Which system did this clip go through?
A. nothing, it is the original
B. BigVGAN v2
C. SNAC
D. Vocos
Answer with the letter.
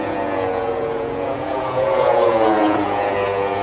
D